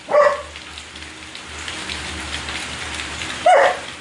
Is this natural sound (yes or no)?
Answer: yes